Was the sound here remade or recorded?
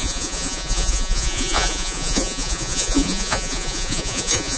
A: remade